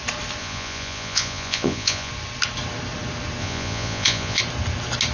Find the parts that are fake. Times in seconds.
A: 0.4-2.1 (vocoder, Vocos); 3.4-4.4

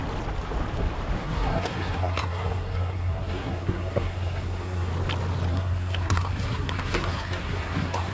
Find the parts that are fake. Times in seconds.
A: 1.2-4.9 (codec, SNAC); 5.5-8.1

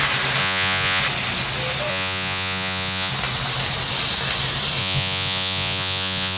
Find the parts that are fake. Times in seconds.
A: 0.4-1.0 (vocoder, Vocos); 1.9-3.1; 4.8-6.4

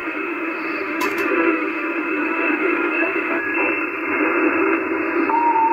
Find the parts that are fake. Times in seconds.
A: 0.0-3.4 (autoencoder, DAC-VAE)

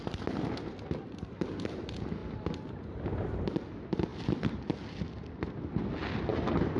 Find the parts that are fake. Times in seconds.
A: none

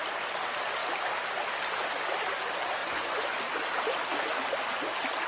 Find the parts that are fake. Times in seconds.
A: 2.8-3.4 (vocoder, Vocos)